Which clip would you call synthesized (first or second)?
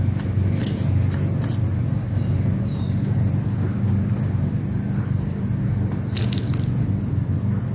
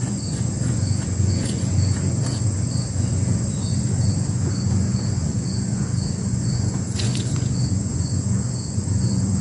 second